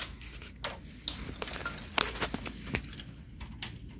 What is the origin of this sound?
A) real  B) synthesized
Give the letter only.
A